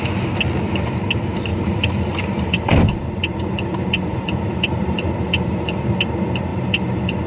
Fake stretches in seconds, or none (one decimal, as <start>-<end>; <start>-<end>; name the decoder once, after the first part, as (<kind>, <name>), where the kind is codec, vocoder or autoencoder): 1.5-5.9 (vocoder, BigVGAN v2); 6.5-7.3